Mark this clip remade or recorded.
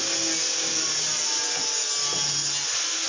recorded